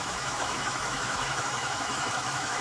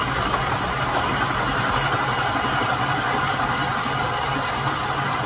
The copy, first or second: first